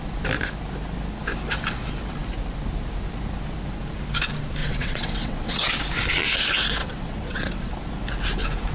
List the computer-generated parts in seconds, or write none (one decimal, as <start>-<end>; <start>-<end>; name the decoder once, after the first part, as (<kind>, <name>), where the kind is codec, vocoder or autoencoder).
4.6-5.7 (vocoder, WaveNeXt); 6.8-7.7